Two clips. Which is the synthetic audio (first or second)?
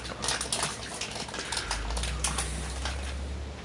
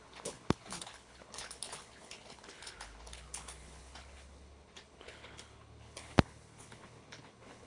second